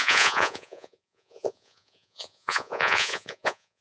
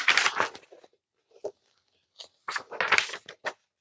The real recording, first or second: second